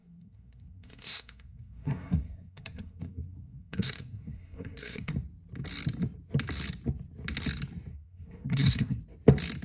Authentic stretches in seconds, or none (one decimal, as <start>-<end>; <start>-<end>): 5.1-7.9; 9.0-9.6

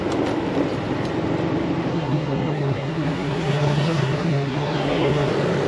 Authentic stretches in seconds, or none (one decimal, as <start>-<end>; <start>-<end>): 0.0-1.9; 5.3-5.7